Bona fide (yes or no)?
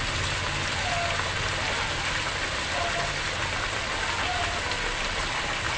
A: yes